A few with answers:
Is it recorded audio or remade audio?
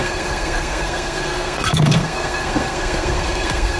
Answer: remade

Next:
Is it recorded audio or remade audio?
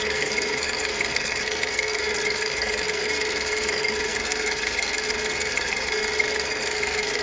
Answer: remade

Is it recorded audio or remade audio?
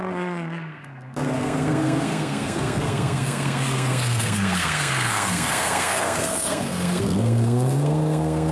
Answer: remade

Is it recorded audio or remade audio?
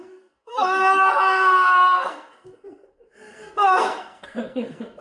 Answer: remade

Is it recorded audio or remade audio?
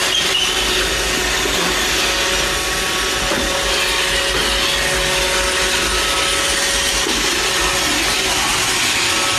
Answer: recorded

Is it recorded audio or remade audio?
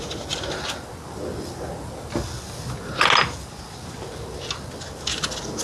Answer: recorded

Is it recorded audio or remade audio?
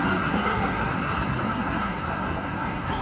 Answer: remade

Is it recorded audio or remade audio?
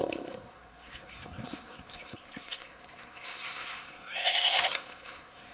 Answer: remade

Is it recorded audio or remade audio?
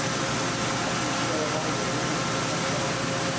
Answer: recorded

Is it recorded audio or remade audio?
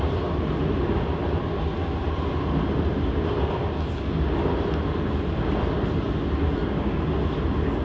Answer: recorded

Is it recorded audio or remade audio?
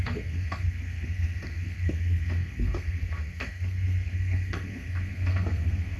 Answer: remade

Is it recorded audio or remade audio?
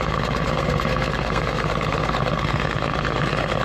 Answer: remade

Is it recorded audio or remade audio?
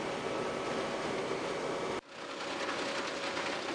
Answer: recorded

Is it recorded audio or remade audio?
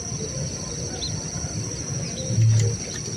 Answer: recorded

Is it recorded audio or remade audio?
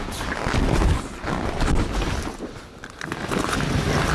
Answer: recorded